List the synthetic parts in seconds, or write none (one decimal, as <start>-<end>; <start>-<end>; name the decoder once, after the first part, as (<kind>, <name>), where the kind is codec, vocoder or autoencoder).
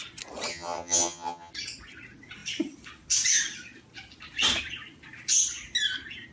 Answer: 0.5-1.5 (vocoder, HiFi-GAN)